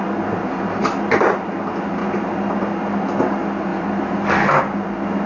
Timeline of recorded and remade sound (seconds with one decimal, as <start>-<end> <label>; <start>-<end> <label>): 0.0-5.3 recorded